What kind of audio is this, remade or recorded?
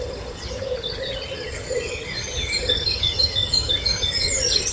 remade